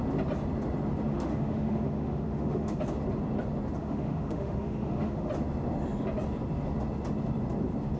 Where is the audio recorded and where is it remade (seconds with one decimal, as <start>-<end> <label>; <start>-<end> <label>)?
0.0-1.1 recorded; 1.1-2.8 remade; 2.8-3.8 recorded; 3.8-5.3 remade; 5.3-8.0 recorded